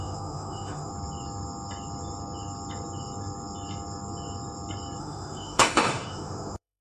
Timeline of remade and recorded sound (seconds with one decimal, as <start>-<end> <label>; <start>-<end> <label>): 0.0-0.9 remade; 0.9-5.0 recorded; 5.0-6.8 remade